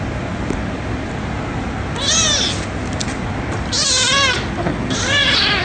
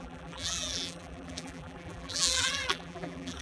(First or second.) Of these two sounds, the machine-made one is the second